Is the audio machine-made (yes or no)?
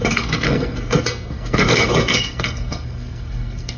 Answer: yes